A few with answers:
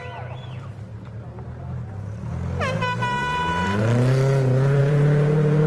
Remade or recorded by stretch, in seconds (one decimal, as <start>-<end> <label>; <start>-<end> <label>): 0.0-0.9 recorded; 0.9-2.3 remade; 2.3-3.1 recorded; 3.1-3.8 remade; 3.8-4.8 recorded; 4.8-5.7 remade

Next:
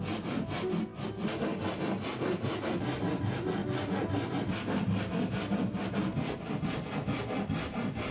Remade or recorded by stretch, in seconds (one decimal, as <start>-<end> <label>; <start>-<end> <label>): 0.0-8.1 recorded

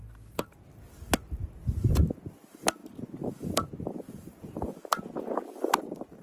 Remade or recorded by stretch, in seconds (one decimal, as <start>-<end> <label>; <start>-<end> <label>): 0.0-1.4 recorded; 1.4-2.8 remade; 2.8-5.6 recorded; 5.6-6.2 remade

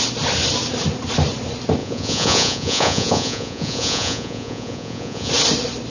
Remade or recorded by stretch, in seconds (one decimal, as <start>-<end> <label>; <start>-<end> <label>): 0.0-1.8 recorded; 1.8-5.3 remade; 5.3-5.9 recorded

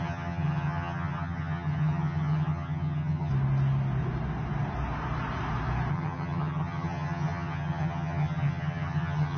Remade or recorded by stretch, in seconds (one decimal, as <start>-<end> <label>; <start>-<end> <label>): 0.0-3.3 remade; 3.3-5.9 recorded; 5.9-9.4 remade